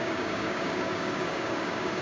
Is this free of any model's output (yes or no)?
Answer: no